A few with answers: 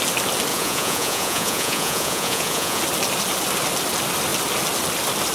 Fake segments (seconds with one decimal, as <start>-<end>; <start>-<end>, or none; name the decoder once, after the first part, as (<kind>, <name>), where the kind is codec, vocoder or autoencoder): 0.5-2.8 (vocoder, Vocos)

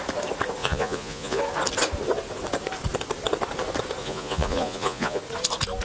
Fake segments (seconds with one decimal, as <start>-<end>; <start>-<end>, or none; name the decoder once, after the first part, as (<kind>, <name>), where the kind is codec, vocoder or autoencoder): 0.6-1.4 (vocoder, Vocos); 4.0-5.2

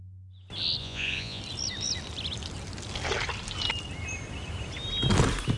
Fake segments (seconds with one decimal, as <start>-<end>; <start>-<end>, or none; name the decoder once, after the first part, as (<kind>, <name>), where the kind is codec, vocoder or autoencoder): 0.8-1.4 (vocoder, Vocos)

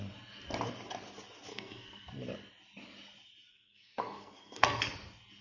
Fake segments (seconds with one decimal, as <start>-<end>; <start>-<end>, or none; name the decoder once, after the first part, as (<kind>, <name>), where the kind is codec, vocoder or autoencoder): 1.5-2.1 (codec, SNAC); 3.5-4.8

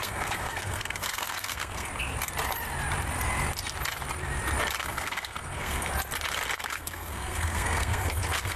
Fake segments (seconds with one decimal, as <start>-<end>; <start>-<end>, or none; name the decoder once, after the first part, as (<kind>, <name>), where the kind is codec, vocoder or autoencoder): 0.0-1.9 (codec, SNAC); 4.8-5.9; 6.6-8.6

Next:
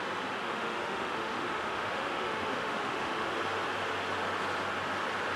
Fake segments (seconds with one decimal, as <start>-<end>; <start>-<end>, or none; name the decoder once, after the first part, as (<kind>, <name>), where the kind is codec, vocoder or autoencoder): 0.4-3.3 (autoencoder, DAC-VAE)